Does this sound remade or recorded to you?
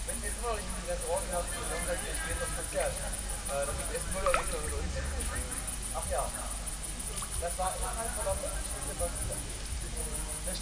recorded